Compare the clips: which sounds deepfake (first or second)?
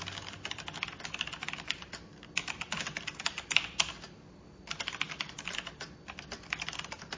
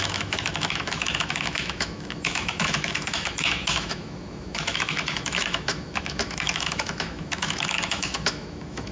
second